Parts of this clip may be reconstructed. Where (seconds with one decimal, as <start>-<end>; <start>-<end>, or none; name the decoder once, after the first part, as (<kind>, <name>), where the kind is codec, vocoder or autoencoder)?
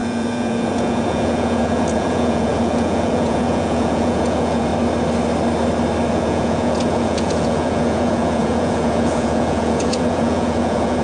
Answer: 0.0-4.7 (vocoder, Vocos); 6.1-11.0